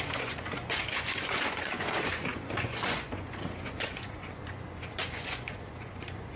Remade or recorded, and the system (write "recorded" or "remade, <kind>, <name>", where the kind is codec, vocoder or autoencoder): remade, vocoder, Vocos